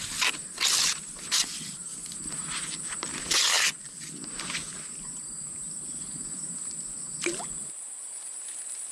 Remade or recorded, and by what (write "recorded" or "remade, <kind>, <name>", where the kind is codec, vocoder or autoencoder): recorded